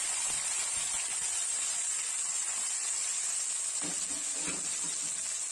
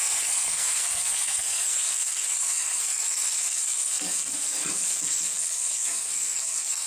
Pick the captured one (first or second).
first